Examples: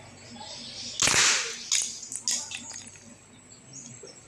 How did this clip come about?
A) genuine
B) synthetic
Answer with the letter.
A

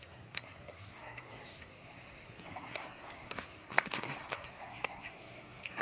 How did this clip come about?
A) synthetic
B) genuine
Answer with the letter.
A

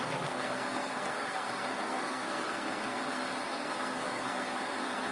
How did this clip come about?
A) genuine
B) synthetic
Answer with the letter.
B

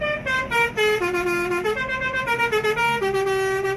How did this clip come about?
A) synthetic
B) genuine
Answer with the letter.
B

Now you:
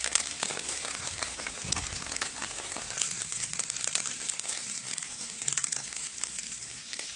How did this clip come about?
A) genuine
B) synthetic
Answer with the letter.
B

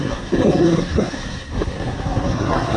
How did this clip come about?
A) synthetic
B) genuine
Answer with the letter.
A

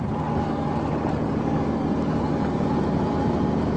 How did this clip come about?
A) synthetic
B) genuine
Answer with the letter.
B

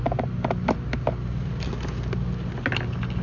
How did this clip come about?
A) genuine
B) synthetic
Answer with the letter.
A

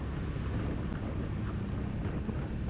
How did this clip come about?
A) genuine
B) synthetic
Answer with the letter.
A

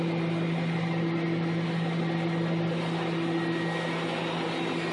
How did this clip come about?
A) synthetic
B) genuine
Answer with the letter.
B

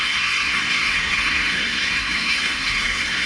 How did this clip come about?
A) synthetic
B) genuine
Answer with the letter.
A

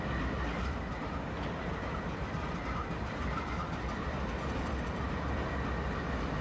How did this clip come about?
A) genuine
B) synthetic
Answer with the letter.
A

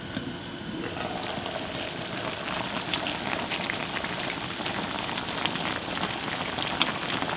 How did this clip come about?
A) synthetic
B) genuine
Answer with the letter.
B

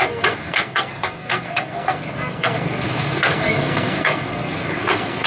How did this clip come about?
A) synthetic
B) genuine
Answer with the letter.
A